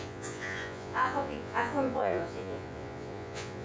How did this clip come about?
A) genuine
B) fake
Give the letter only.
B